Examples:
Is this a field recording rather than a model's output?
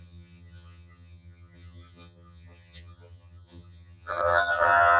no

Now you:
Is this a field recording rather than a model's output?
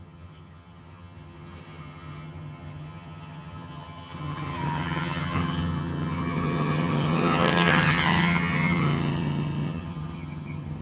no